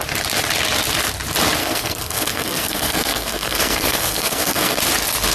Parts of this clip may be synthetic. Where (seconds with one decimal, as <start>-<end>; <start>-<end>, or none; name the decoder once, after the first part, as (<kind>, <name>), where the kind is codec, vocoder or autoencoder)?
1.6-4.8 (codec, SNAC)